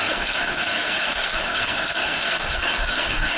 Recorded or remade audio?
remade